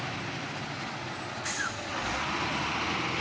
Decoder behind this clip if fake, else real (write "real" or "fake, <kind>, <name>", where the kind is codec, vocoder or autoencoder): real